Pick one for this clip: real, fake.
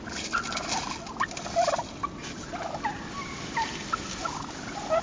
real